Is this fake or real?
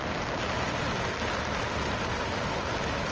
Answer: real